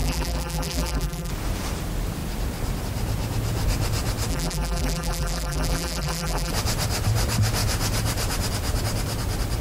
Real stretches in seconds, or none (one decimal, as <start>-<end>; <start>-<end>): 1.3-4.3; 6.5-9.6